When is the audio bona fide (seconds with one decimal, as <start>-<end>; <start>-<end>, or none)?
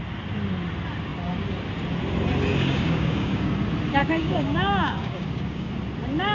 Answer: 0.0-2.5; 3.5-4.0; 5.7-6.3